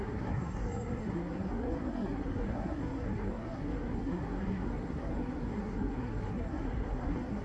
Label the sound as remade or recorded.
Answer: remade